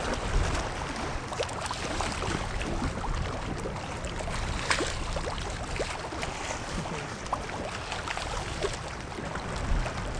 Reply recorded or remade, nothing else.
recorded